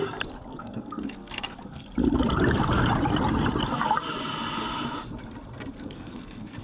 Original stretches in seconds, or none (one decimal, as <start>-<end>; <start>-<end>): 0.0-0.5; 1.8-5.7